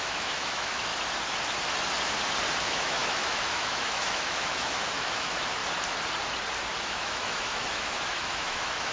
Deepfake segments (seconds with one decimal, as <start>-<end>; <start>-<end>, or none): 0.0-0.9; 2.6-5.6; 6.8-8.9